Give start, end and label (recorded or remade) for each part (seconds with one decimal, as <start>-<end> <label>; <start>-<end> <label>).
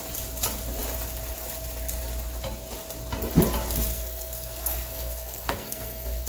0.0-3.9 recorded; 3.9-6.3 remade